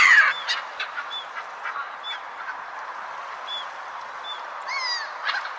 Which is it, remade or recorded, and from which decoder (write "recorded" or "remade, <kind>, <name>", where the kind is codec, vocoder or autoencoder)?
recorded